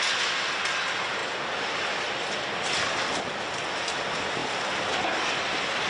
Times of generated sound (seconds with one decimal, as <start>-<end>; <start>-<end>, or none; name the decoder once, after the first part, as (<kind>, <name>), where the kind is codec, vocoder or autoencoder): none